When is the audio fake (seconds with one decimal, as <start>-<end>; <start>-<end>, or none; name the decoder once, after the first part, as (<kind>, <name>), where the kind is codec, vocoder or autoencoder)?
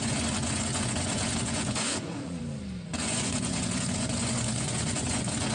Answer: 0.0-2.4 (vocoder, Vocos); 2.9-5.5